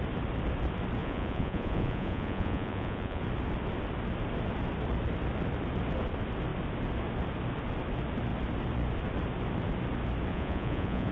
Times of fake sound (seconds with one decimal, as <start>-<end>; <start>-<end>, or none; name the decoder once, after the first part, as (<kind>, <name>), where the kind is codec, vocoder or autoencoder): 1.0-3.2 (vocoder, Vocos); 10.3-11.1